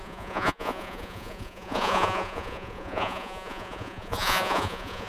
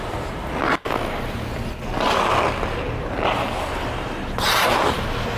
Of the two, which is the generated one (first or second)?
first